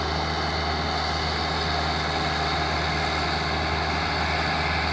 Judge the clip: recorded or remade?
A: recorded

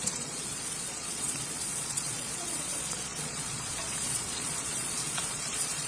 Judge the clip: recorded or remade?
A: remade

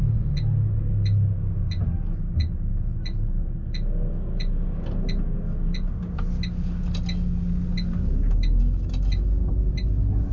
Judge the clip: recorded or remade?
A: recorded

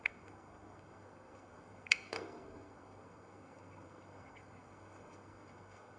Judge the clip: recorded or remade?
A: remade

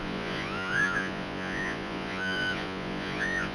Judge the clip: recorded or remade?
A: remade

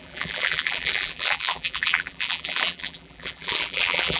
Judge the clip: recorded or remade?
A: remade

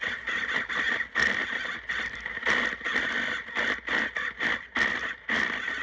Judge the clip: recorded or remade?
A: recorded